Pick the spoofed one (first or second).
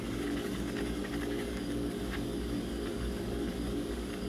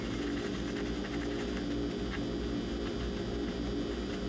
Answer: first